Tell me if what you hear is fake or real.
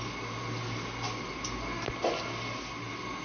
real